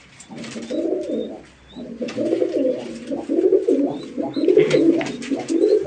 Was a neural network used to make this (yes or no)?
no